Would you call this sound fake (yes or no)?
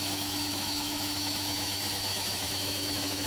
yes